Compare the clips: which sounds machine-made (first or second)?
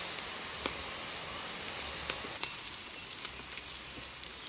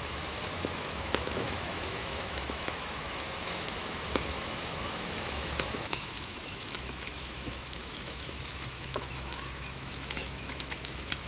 second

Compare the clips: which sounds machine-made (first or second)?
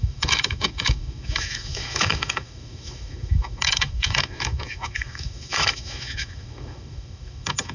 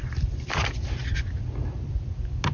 first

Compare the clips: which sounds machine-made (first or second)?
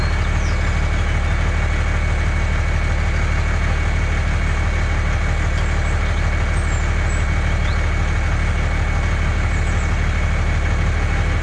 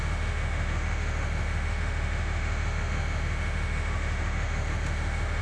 second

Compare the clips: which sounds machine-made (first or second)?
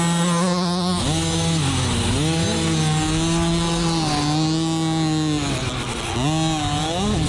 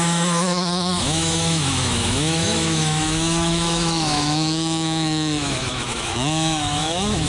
second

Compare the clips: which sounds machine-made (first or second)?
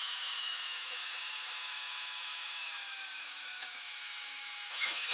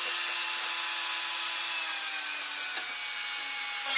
first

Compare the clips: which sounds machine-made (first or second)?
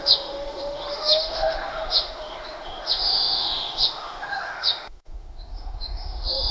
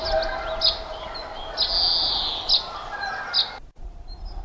first